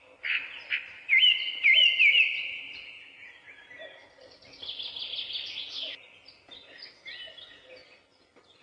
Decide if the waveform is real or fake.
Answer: real